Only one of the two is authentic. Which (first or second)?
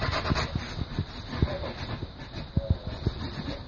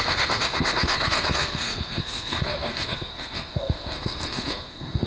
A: first